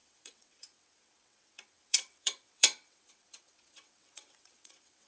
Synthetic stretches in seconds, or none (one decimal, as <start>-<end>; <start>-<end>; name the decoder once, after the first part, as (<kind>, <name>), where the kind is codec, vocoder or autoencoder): 0.0-5.1 (vocoder, WaveNeXt)